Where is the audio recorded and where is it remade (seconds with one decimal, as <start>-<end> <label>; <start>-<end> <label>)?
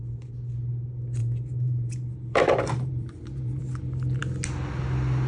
0.0-1.2 recorded; 1.2-3.6 remade; 3.6-5.3 recorded